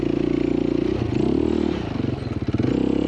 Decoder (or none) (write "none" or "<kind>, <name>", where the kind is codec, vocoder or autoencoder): none